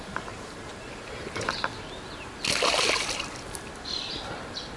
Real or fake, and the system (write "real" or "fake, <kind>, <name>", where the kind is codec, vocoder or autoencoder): real